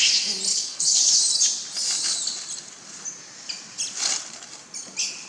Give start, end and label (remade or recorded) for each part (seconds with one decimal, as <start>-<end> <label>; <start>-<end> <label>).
0.0-0.5 recorded; 0.5-1.1 remade; 1.1-5.3 recorded

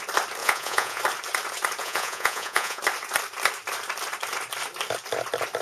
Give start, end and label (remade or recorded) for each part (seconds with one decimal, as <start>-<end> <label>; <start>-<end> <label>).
0.0-0.4 recorded; 0.4-1.0 remade; 1.0-1.8 recorded; 1.8-2.8 remade; 2.8-5.6 recorded